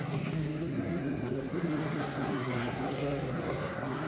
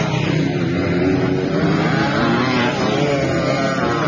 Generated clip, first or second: first